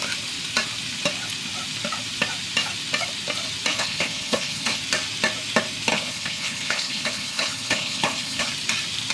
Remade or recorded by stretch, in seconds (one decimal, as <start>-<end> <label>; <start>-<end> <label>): 0.0-3.7 recorded; 3.7-4.8 remade; 4.8-5.9 recorded; 5.9-8.5 remade; 8.5-9.1 recorded